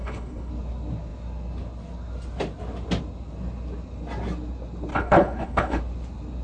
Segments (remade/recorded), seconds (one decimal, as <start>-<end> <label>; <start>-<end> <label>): 0.0-0.5 remade; 0.5-4.9 recorded; 4.9-5.8 remade; 5.8-6.4 recorded